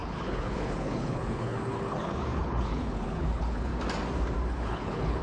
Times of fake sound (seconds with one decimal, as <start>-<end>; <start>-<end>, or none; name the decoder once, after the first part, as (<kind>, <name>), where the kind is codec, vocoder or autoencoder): 0.0-3.7 (codec, HILCodec); 4.5-5.2